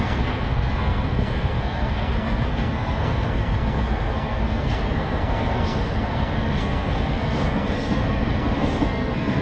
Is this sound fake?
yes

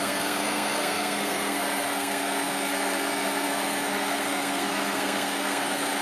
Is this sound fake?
yes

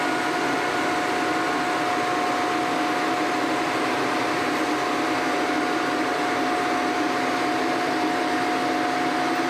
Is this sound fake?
no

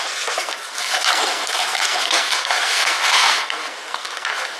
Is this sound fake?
yes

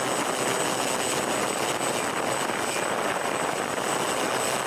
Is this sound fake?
no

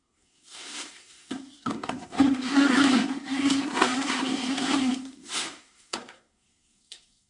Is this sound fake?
yes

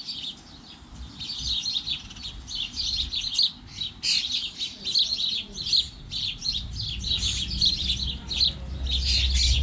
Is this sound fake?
no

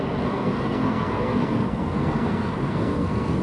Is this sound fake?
yes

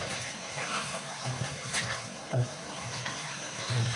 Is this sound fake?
yes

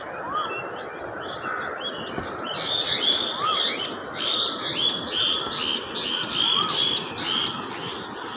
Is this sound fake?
no